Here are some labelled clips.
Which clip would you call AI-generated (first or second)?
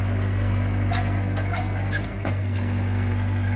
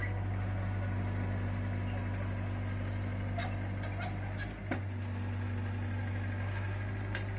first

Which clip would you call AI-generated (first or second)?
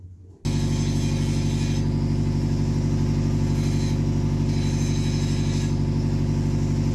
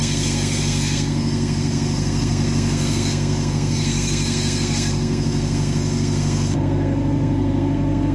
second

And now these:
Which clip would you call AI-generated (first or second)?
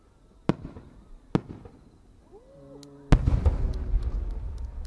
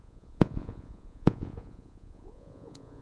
second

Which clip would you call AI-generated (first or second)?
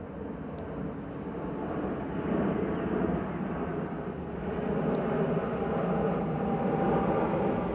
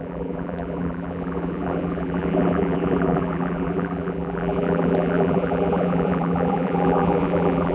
second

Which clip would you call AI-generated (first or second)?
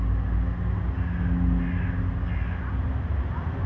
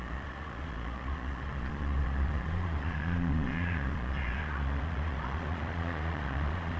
second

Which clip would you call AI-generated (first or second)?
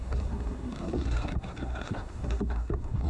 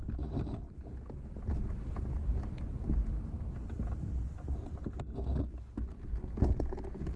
first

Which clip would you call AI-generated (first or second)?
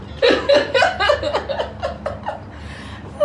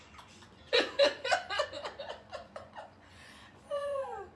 second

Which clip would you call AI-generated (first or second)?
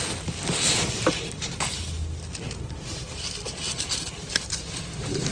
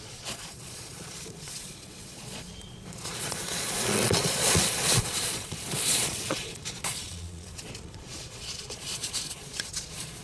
second